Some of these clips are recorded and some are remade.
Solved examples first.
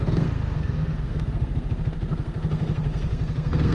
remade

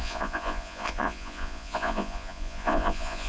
remade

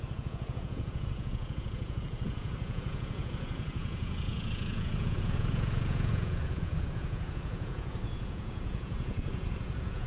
remade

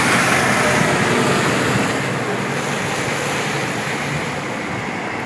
recorded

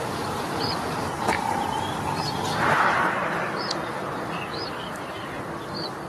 remade